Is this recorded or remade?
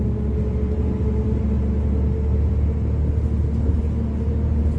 recorded